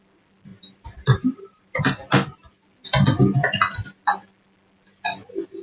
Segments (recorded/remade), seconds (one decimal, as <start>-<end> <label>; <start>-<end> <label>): 0.0-0.5 recorded; 0.5-1.8 remade; 1.8-5.6 recorded